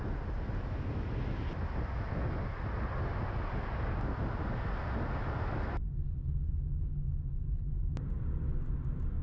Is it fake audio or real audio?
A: real